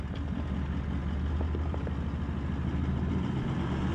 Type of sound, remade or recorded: recorded